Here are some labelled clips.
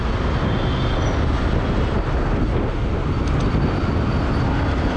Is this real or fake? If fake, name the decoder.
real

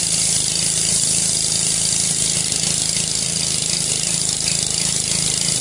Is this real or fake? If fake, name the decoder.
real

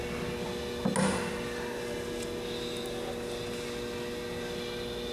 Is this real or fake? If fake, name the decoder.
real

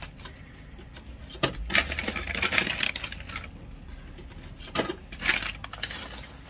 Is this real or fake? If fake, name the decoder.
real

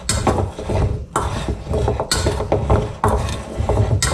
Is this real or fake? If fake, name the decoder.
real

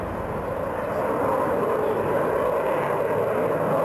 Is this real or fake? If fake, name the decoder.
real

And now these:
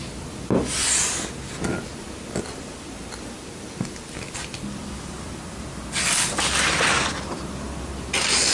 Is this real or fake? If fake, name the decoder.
real